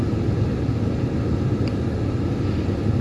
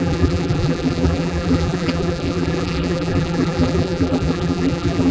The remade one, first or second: second